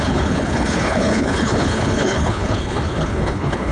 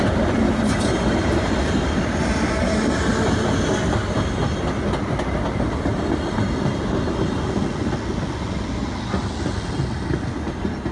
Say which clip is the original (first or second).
second